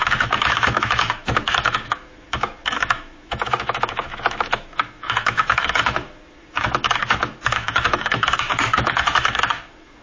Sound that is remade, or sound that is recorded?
remade